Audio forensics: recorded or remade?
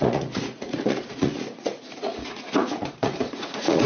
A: remade